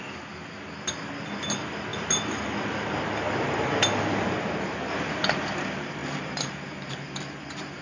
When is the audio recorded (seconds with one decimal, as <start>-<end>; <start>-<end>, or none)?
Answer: 0.0-6.0